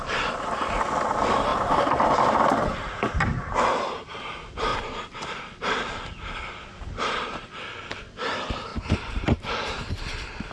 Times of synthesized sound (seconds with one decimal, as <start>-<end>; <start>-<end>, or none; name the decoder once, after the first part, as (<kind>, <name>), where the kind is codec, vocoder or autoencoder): 1.5-2.1 (vocoder, BigVGAN v2); 2.7-3.5; 4.7-5.4; 8.7-9.8